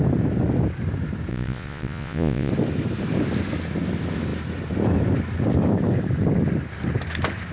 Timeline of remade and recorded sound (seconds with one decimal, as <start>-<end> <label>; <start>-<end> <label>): 0.0-1.3 recorded; 1.3-2.5 remade; 2.5-7.5 recorded